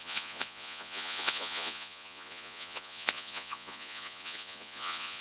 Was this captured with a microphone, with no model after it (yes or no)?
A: no